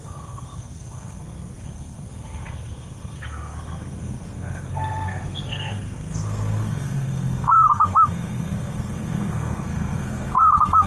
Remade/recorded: remade